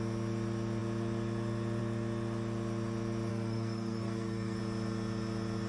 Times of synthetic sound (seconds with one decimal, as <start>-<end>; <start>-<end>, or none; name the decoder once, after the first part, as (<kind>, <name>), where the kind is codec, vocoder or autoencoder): 3.3-4.6 (codec, SNAC)